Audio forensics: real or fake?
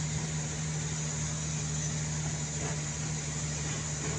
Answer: real